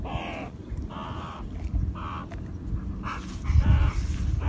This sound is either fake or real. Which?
real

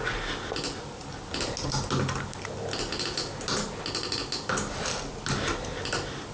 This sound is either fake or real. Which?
real